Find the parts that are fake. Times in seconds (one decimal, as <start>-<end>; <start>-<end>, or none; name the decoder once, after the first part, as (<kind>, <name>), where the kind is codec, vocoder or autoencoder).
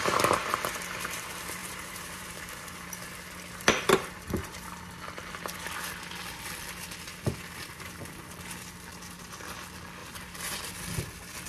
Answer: 1.6-2.4 (vocoder, BigVGAN v2); 10.0-10.7